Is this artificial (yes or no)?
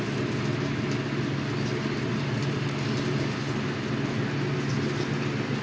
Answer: no